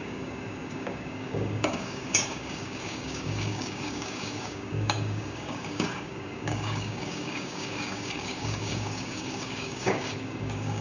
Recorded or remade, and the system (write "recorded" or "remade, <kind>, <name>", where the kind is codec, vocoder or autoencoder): remade, codec, DAC